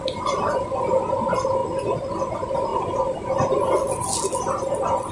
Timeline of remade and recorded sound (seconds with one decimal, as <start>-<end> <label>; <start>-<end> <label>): 0.0-5.1 recorded